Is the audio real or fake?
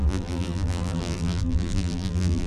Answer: fake